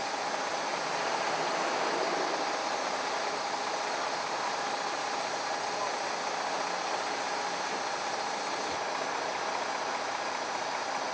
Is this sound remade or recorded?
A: recorded